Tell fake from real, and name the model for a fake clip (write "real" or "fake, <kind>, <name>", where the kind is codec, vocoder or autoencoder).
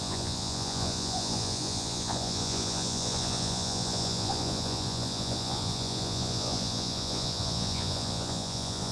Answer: fake, vocoder, Vocos